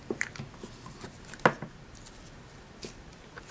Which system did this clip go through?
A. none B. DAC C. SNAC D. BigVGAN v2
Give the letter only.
A